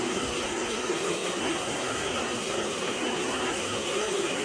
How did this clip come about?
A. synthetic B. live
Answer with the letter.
A